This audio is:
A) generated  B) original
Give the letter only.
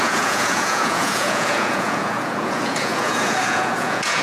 A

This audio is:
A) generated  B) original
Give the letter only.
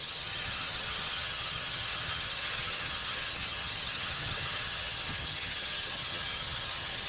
A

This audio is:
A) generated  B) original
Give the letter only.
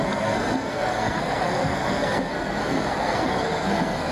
A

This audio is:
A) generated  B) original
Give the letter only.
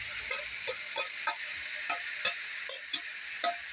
B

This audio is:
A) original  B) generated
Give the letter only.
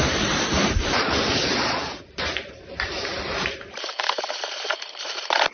B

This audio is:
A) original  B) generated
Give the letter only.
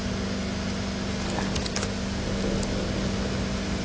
A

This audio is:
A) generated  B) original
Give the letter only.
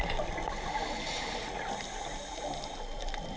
B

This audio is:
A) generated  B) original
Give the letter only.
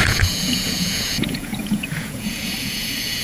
A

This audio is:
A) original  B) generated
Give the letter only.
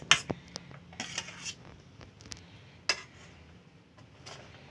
A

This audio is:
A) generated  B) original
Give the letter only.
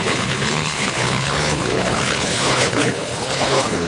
A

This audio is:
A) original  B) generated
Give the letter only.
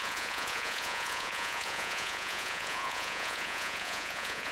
B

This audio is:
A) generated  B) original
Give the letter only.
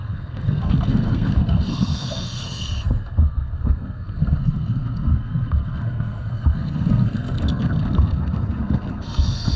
A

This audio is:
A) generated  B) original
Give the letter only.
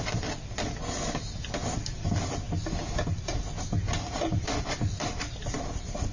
B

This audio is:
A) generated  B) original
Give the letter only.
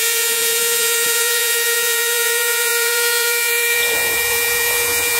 A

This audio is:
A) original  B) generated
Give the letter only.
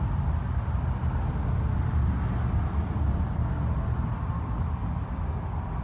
A